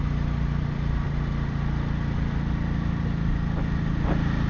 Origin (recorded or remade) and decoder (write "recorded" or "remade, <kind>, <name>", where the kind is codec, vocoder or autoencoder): recorded